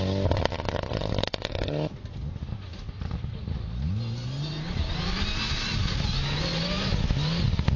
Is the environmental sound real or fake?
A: real